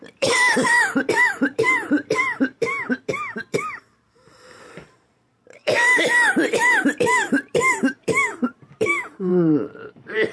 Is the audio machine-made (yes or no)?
yes